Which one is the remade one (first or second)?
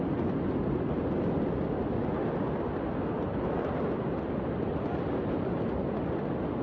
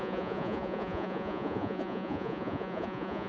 second